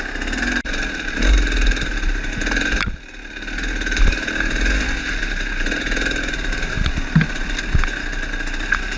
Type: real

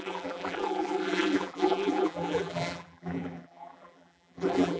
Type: fake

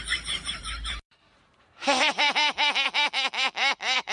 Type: fake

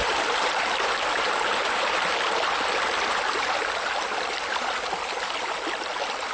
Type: real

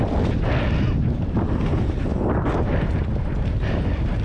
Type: real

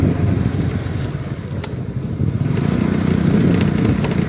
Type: real